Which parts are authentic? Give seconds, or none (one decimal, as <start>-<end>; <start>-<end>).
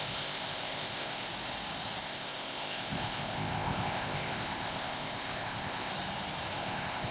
1.3-2.0; 5.9-6.6